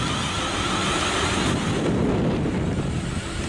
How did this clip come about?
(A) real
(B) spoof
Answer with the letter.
A